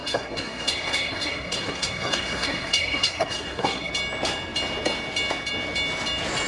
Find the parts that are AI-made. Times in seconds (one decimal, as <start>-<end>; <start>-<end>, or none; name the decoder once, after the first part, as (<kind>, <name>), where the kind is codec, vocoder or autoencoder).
0.0-3.9 (codec, SNAC)